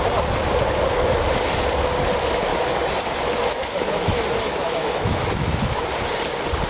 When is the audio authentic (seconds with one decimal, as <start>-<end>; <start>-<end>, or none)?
0.0-2.5; 5.8-6.7